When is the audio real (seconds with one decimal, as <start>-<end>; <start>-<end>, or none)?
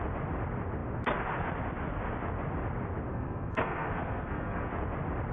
0.0-3.1; 4.7-5.3